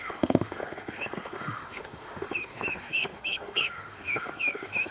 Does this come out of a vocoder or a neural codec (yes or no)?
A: yes